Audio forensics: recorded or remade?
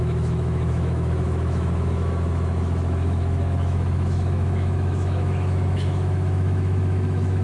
remade